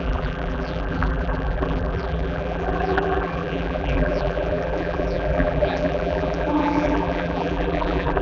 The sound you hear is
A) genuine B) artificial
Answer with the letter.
B